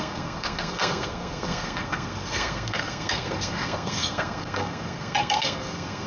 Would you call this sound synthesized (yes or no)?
yes